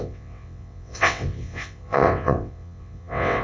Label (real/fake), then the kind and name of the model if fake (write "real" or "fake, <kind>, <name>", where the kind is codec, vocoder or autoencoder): fake, vocoder, WaveNeXt